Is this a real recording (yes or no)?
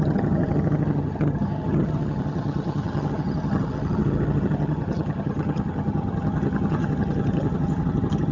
no